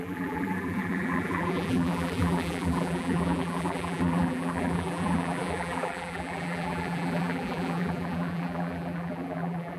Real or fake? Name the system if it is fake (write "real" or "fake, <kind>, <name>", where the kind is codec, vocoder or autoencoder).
fake, vocoder, BigVGAN v2